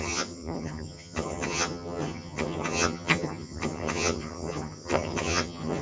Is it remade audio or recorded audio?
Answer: remade